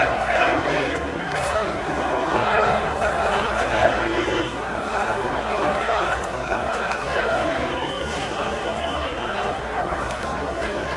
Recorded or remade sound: remade